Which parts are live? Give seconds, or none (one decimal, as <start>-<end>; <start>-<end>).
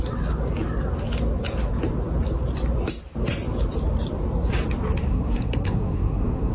0.0-5.0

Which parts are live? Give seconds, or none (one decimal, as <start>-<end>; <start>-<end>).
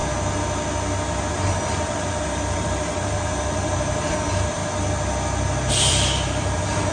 0.0-1.3; 4.6-5.7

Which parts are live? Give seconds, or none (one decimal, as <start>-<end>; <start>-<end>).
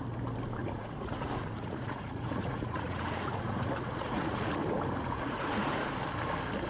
0.0-0.6; 4.6-5.0; 5.9-6.7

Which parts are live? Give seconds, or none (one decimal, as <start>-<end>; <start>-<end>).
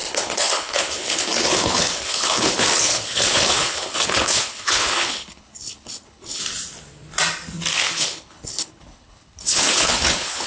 6.4-7.7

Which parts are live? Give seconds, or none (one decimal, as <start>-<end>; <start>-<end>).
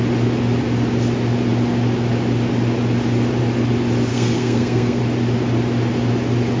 0.0-4.1; 5.0-6.6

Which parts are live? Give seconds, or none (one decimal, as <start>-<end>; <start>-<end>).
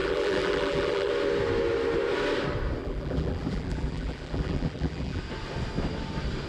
1.1-2.8; 5.2-6.5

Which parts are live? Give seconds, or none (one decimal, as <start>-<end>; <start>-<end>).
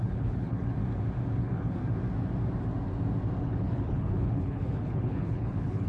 0.8-1.4; 1.8-3.4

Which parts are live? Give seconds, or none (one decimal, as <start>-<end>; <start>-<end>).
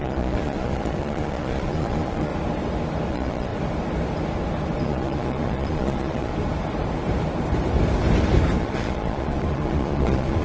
2.3-3.1; 3.5-4.8; 6.3-8.6